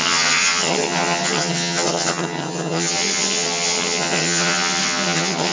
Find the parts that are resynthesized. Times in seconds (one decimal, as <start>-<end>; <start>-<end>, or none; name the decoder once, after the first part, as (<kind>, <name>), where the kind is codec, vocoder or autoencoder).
0.0-5.5 (vocoder, HiFi-GAN)